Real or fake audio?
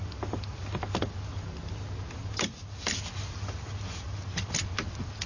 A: real